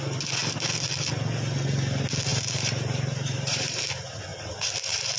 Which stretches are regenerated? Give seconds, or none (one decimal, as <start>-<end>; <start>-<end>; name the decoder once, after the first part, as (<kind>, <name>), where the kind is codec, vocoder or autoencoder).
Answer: 2.3-3.8 (vocoder, BigVGAN v2); 4.3-5.2